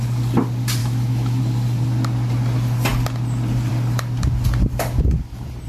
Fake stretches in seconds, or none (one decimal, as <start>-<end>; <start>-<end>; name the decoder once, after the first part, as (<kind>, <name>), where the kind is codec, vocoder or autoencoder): 0.8-1.4 (autoencoder, DAC-VAE)